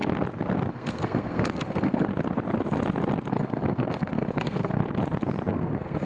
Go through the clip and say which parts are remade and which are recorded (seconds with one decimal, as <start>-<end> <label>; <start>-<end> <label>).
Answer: 0.0-0.7 recorded; 0.7-2.1 remade; 2.1-3.3 recorded; 3.3-4.8 remade; 4.8-5.5 recorded; 5.5-6.1 remade